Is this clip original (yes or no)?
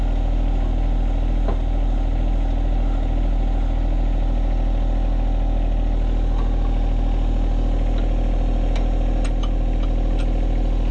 yes